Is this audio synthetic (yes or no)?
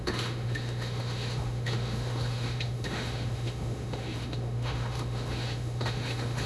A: yes